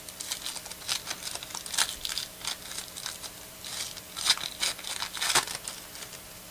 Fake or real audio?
real